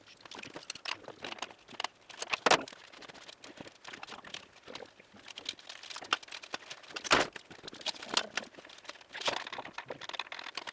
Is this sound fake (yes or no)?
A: no